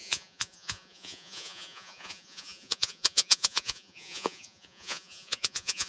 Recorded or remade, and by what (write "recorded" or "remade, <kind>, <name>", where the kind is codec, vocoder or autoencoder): remade, vocoder, Vocos